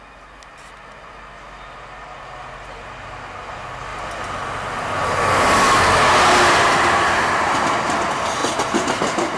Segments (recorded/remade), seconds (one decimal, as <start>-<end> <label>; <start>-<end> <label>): 0.0-9.4 recorded